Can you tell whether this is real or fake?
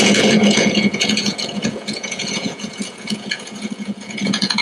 fake